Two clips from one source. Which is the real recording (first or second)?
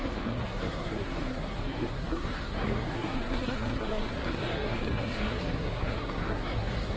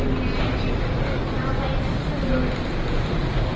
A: second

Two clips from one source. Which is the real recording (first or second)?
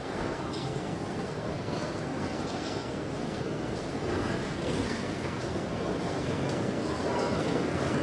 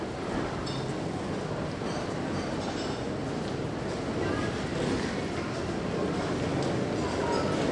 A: second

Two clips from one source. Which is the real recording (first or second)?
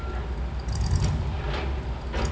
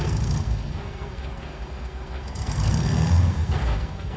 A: first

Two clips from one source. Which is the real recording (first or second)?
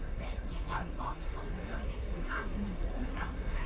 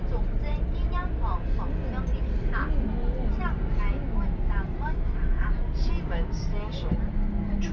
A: second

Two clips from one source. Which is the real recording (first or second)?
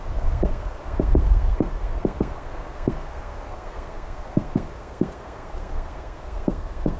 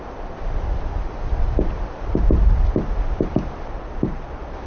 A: second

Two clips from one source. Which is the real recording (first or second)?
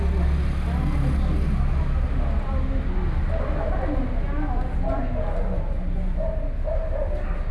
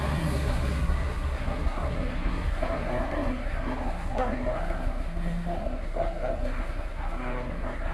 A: first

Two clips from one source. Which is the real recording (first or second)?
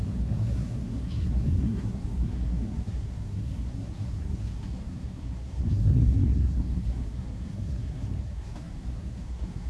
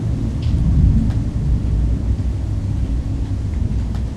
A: second